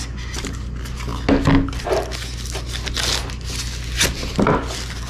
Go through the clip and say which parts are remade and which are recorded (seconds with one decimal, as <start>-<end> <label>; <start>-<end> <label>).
0.0-5.1 recorded